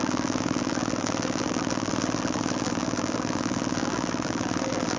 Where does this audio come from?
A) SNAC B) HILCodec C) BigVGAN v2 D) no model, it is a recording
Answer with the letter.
C